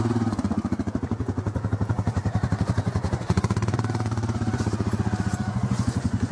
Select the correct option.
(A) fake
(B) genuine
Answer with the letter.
A